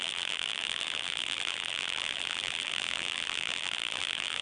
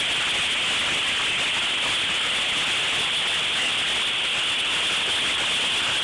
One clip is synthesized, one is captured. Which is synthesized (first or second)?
first